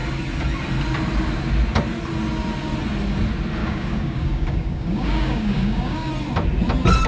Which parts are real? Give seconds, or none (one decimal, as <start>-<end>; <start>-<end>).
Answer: 0.0-3.6; 6.1-7.1